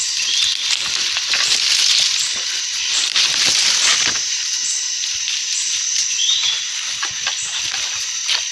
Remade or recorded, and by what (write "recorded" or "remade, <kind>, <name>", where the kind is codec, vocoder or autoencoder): recorded